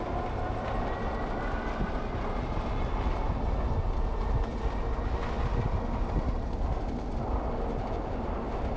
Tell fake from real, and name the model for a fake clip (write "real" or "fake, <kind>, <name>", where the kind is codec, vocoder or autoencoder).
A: real